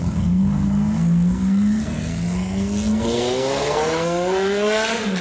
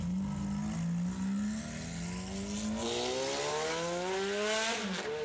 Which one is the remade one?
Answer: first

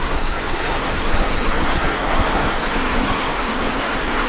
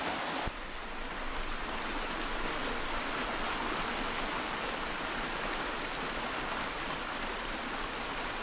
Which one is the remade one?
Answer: first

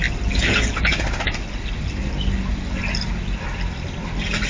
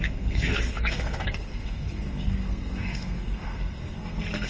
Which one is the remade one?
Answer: second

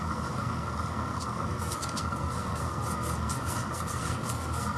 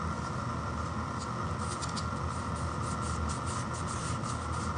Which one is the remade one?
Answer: first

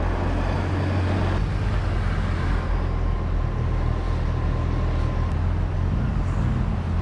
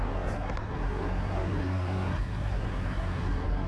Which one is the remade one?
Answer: second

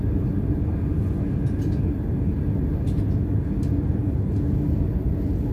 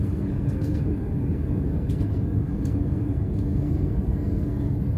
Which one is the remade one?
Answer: second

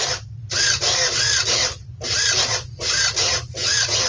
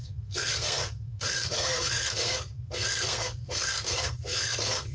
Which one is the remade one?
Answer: second